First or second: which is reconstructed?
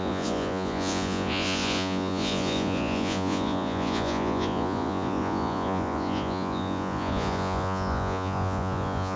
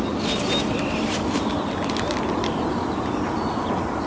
first